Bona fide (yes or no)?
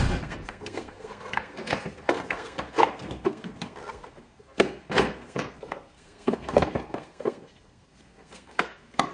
no